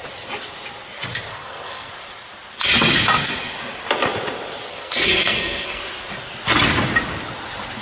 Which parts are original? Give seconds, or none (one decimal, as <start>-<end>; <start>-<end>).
0.0-1.3; 1.9-4.7; 5.8-7.8